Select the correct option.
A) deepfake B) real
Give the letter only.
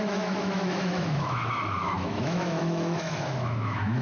A